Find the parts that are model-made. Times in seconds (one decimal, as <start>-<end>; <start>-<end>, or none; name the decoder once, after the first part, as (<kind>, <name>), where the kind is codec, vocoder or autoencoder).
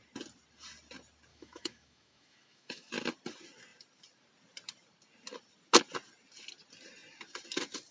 1.3-2.9 (autoencoder, DAC-VAE)